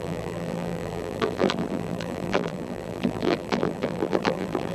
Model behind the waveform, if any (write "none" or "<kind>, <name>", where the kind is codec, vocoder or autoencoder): vocoder, BigVGAN v2